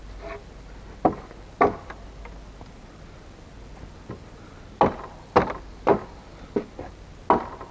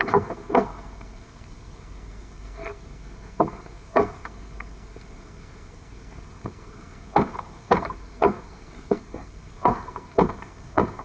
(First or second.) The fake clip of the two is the second